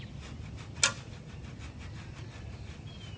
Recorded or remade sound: recorded